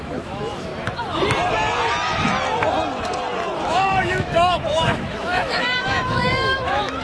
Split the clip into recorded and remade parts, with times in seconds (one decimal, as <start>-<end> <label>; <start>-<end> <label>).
0.0-0.7 remade; 0.7-3.6 recorded; 3.6-7.0 remade